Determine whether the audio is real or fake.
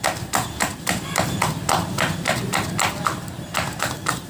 real